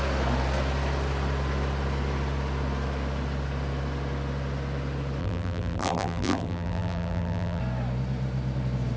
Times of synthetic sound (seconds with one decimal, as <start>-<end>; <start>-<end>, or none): 5.2-7.6